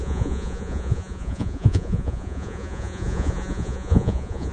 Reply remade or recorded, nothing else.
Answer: remade